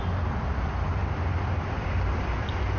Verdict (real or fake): fake